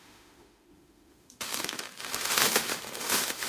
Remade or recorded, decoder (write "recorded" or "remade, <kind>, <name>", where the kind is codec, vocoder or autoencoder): remade, autoencoder, DAC-VAE